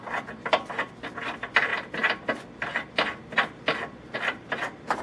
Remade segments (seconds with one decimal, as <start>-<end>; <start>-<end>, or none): none